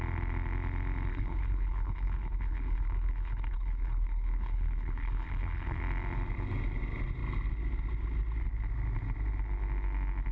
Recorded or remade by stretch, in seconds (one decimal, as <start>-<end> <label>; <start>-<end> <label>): 0.0-1.1 recorded; 1.1-5.8 remade; 5.8-10.3 recorded